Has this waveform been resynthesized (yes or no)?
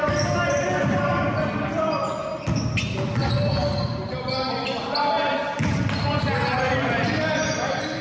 no